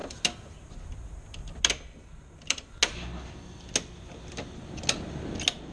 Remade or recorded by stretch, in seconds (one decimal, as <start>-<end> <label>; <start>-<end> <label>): 0.0-5.7 recorded